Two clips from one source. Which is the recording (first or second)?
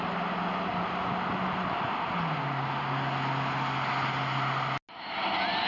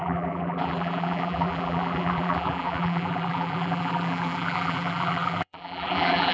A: first